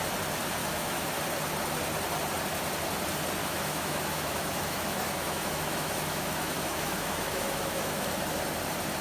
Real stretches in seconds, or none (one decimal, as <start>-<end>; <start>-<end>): 0.0-0.6; 1.1-3.4; 8.2-9.0